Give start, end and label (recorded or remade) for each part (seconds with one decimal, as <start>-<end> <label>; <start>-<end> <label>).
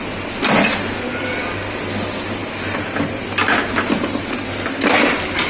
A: 0.0-2.4 recorded; 2.4-3.7 remade; 3.7-5.5 recorded